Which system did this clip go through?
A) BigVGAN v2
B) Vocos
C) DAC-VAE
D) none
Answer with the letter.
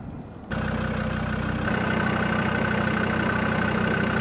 D